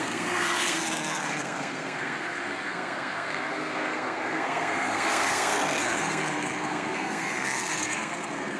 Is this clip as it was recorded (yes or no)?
no